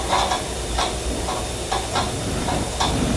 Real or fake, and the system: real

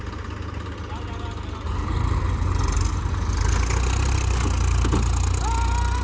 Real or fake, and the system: real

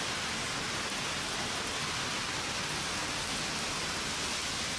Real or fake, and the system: real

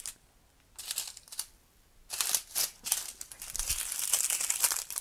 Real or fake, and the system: real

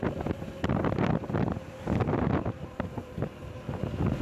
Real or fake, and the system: real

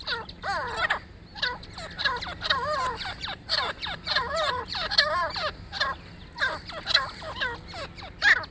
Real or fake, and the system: real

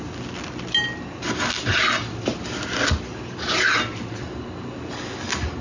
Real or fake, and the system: real